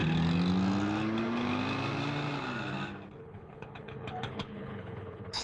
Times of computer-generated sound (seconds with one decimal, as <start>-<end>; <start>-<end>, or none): 3.2-5.4